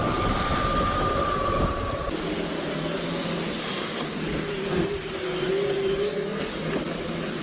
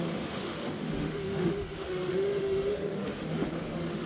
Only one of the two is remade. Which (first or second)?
second